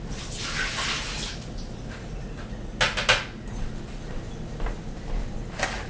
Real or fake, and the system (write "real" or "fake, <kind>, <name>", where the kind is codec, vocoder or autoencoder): real